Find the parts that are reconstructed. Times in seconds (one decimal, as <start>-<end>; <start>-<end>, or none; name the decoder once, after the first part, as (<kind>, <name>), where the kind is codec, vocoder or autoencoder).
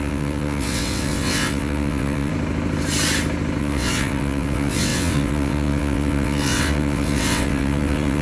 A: 0.0-2.3 (vocoder, WaveNeXt); 3.6-8.2